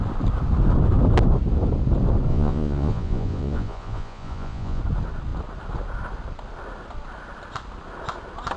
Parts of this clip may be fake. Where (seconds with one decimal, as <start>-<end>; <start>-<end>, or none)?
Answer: 2.3-4.8

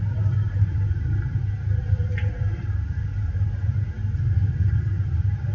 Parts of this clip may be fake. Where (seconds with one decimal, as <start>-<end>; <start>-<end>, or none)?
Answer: none